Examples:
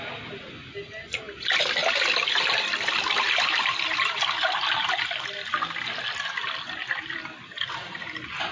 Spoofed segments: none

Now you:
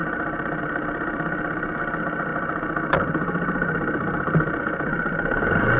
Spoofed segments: 0.0-2.3 (vocoder, BigVGAN v2); 2.9-5.8

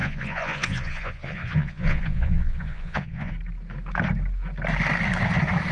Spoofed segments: 0.0-3.3 (vocoder, Vocos)

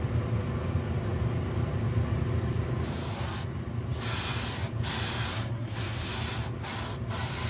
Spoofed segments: 5.3-6.1 (codec, SNAC)